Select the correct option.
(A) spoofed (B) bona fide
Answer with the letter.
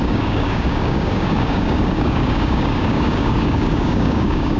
A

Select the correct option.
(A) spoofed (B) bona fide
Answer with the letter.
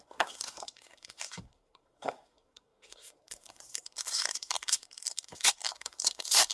A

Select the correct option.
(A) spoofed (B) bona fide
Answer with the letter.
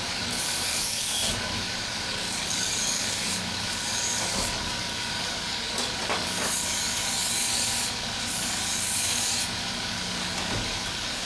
A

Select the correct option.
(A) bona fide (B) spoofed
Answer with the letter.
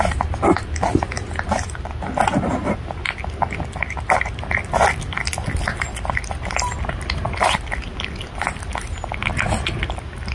A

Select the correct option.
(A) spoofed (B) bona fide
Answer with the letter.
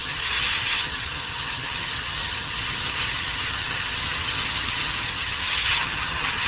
A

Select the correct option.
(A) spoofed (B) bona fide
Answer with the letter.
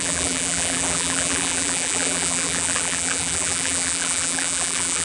A